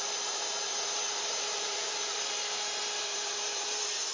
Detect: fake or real fake